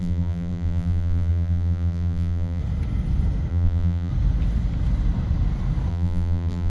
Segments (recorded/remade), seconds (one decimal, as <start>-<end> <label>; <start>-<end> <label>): 0.0-2.6 remade; 2.6-3.5 recorded; 3.5-4.1 remade; 4.1-5.9 recorded; 5.9-6.7 remade